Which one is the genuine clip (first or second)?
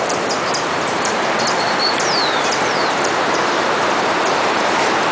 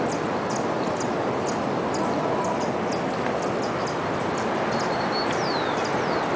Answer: second